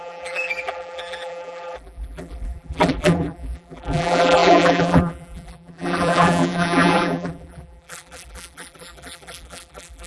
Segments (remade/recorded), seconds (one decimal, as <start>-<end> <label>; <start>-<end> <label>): 0.0-10.1 remade

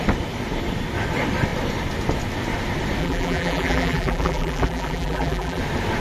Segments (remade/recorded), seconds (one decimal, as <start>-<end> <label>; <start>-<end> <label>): 0.0-3.0 recorded; 3.0-5.6 remade; 5.6-6.0 recorded

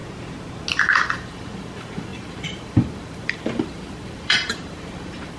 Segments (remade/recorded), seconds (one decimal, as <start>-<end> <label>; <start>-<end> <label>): 0.0-0.7 recorded; 0.7-5.4 remade

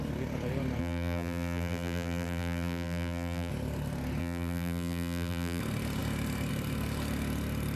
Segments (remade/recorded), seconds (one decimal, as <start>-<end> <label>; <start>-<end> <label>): 0.0-0.8 recorded; 0.8-3.5 remade; 3.5-4.2 recorded; 4.2-5.6 remade; 5.6-7.8 recorded

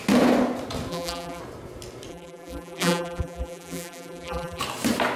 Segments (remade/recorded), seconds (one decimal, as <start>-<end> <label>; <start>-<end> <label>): 0.0-0.9 recorded; 0.9-1.4 remade; 1.4-2.1 recorded; 2.1-4.6 remade; 4.6-5.2 recorded

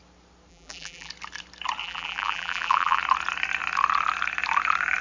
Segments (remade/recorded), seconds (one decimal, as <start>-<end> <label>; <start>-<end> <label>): 0.0-0.5 recorded; 0.5-1.1 remade; 1.1-1.8 recorded; 1.8-3.0 remade; 3.0-5.0 recorded